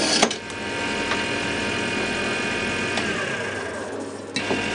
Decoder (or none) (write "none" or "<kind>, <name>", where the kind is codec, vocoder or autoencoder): none